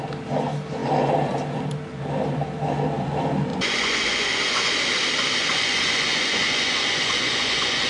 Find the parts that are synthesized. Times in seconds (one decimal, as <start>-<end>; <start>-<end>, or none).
3.5-4.7; 5.4-7.9